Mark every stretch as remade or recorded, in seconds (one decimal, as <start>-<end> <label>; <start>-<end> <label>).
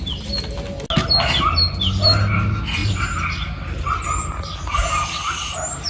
0.0-5.9 recorded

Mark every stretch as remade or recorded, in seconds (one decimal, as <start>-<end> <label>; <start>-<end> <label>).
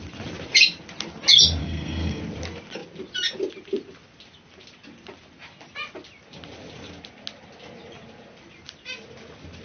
0.0-1.6 recorded; 1.6-2.2 remade; 2.2-9.6 recorded